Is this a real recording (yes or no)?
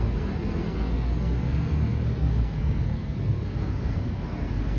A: no